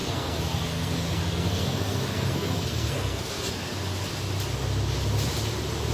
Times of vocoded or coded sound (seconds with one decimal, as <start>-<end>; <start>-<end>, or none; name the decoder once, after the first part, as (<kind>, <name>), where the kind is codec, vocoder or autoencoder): 0.0-3.5 (codec, SNAC)